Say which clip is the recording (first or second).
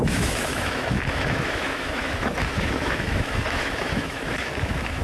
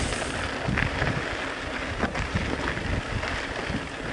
second